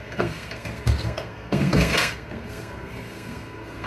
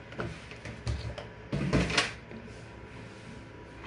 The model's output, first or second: first